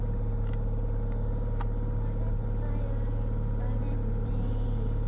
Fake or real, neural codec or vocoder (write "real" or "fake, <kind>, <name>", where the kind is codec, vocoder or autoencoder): real